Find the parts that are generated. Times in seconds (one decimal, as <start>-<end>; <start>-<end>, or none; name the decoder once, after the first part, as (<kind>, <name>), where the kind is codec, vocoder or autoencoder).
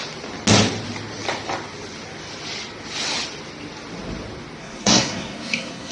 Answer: 4.6-5.9 (codec, SNAC)